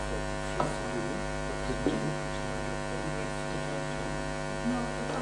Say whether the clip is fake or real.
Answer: real